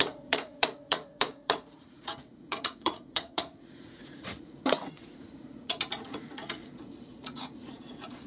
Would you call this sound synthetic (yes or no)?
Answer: yes